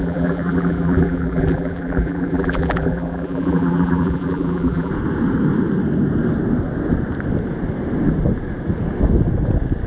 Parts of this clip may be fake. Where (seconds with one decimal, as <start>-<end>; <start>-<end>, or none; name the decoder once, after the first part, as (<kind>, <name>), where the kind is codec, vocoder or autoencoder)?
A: 0.0-4.9 (vocoder, BigVGAN v2)

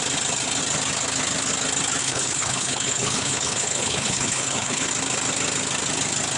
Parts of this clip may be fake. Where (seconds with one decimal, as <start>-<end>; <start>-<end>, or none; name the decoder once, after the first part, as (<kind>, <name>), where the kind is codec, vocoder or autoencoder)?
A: 2.0-4.9 (codec, HILCodec)

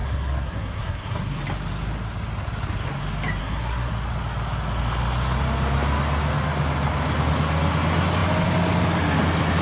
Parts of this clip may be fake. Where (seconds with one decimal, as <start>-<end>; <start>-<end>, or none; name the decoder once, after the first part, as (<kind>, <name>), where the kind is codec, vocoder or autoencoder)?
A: 0.0-1.4 (codec, SNAC); 3.4-3.9

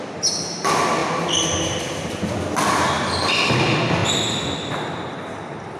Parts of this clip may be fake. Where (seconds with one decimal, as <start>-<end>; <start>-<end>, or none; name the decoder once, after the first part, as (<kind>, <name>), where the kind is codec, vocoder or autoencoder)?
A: none

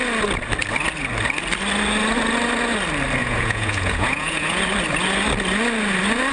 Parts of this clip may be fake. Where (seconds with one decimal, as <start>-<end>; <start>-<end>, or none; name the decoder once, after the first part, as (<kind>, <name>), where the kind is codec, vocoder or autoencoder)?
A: 3.2-4.6 (vocoder, Vocos)

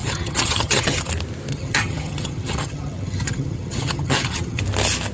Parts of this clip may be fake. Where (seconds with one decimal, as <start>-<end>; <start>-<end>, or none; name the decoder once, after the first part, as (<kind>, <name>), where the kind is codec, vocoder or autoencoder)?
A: 0.0-1.1 (vocoder, HiFi-GAN); 1.5-4.6

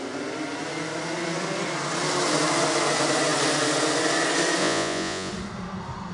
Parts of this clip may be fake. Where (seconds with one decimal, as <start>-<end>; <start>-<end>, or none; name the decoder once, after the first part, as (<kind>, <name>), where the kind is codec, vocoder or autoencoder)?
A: 4.6-5.3 (vocoder, Vocos)